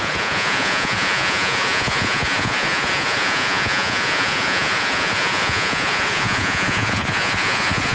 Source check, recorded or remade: remade